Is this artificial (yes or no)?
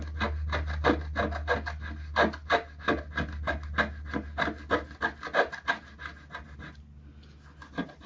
no